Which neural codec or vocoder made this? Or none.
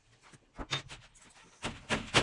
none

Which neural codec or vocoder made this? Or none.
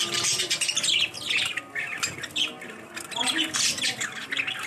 none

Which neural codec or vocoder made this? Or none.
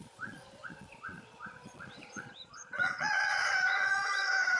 vocoder, Vocos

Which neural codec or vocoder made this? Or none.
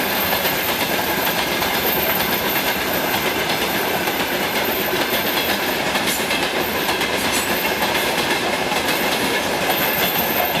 vocoder, BigVGAN v2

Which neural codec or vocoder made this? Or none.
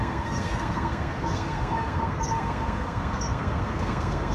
codec, SNAC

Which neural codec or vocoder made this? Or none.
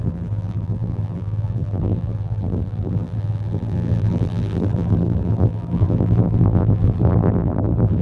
vocoder, BigVGAN v2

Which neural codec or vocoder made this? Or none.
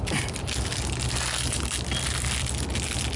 none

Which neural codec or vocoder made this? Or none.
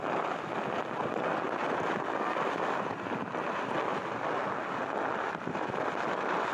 none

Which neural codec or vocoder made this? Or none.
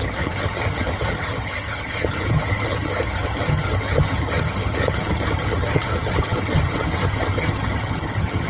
vocoder, HiFi-GAN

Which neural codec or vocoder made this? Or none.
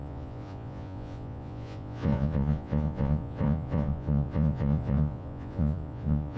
vocoder, Vocos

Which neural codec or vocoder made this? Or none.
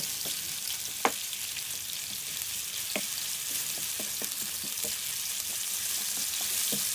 none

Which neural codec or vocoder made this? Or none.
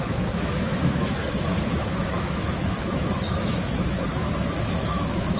autoencoder, DAC-VAE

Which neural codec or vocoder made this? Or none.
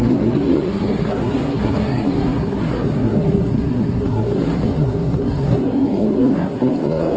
codec, SNAC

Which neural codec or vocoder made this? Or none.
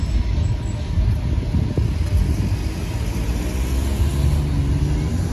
none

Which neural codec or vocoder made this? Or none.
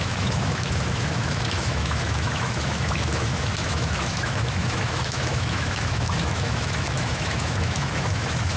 autoencoder, DAC-VAE